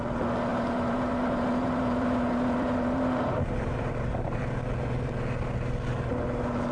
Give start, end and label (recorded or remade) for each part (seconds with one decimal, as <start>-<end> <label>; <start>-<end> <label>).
0.0-0.5 recorded; 0.5-4.4 remade; 4.4-6.7 recorded